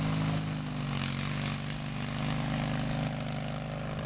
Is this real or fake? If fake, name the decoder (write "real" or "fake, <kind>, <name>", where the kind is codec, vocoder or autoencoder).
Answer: real